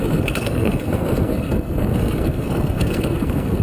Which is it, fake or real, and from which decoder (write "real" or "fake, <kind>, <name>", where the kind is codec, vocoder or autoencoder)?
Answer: fake, codec, SNAC